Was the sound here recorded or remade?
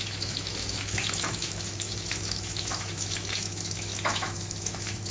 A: remade